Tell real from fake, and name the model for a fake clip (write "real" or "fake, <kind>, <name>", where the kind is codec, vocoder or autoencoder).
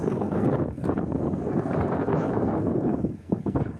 fake, codec, SNAC